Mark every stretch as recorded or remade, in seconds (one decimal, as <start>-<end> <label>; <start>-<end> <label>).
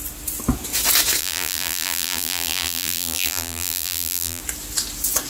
0.0-1.2 recorded; 1.2-4.4 remade; 4.4-5.3 recorded